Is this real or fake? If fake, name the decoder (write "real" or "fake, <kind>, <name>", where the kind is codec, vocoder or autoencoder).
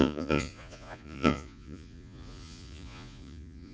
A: fake, vocoder, Vocos